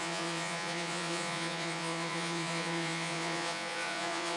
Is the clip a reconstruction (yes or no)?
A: yes